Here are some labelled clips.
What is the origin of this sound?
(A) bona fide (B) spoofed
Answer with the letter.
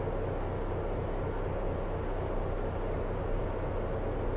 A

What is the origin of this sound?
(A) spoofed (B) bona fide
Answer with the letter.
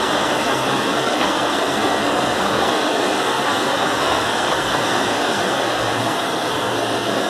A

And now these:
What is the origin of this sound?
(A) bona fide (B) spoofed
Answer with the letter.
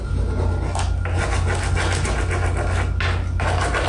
A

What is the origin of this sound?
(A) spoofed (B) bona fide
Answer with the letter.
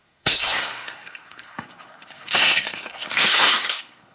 A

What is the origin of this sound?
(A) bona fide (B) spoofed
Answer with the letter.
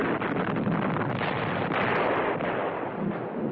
A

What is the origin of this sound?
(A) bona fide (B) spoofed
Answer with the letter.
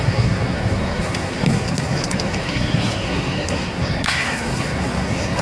B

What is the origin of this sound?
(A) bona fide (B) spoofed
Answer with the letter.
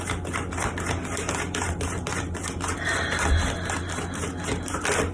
A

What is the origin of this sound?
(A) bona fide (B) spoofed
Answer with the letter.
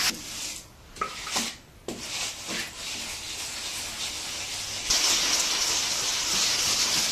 A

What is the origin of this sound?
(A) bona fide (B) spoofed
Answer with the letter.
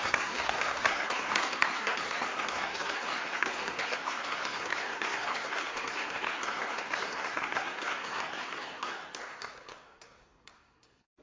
B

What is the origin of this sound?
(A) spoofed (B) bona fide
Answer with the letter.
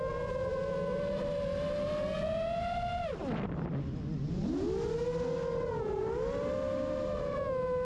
B